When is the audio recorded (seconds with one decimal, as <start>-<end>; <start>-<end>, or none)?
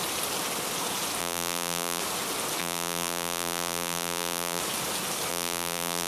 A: 0.0-1.2; 2.0-2.6; 4.6-5.3